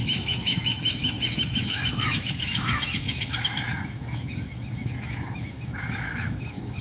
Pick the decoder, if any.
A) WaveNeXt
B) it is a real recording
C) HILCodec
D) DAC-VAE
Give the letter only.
D